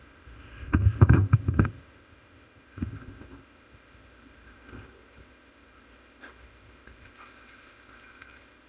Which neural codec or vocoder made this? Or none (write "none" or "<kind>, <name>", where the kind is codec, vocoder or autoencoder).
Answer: codec, ZipCodec